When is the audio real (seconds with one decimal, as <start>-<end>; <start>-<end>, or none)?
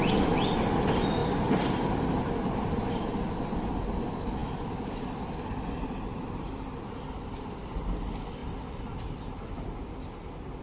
0.0-1.2; 2.2-6.1; 6.8-10.6